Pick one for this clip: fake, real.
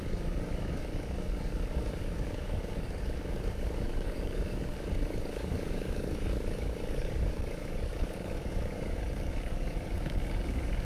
fake